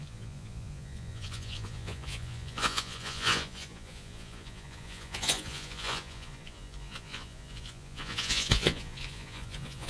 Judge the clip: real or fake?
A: fake